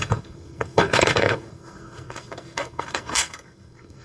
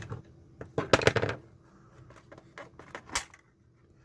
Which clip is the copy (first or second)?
first